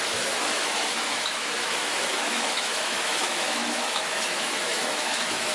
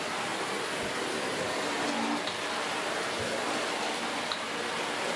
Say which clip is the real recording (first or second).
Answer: second